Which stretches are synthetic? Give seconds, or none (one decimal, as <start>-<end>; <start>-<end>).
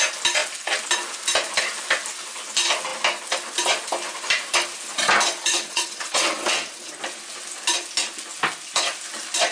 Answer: 5.5-6.9